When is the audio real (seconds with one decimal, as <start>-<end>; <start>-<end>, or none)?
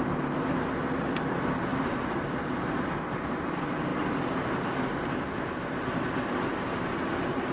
0.0-1.7; 3.1-7.5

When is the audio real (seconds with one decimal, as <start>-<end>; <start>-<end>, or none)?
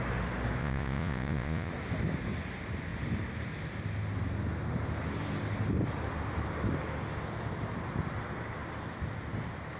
0.0-0.6; 1.7-9.8